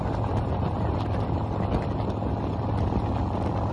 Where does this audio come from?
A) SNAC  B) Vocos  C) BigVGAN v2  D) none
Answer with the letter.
D